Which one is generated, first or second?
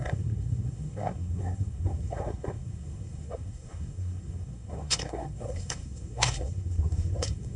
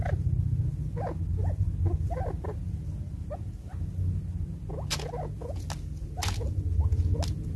first